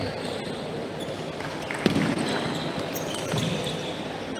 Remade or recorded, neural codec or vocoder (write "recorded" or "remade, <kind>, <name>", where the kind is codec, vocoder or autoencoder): recorded